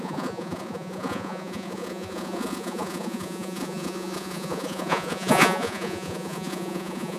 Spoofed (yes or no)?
yes